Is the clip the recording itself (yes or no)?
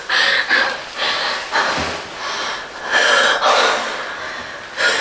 yes